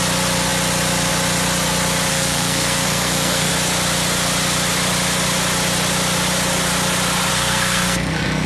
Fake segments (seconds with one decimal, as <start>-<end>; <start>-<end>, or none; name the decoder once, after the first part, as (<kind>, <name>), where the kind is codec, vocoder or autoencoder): 2.1-3.5 (codec, SNAC); 7.3-8.5